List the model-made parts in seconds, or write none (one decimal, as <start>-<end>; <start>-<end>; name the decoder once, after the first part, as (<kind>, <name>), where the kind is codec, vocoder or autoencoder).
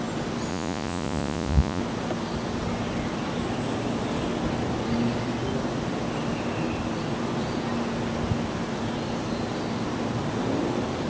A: 0.5-1.8 (vocoder, Vocos)